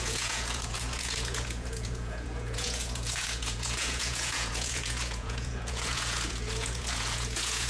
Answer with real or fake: fake